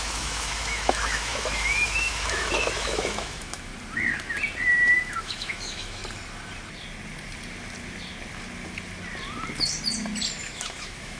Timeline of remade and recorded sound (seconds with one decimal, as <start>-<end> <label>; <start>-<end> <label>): 0.0-3.7 remade; 3.7-5.2 recorded; 5.2-6.0 remade; 6.0-10.4 recorded; 10.4-11.2 remade